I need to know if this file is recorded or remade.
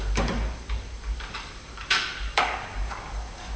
remade